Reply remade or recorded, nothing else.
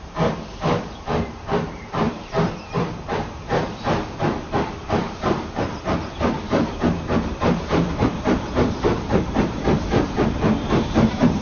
remade